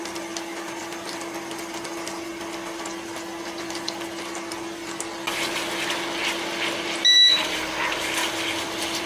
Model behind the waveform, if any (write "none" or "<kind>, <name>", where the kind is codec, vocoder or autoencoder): none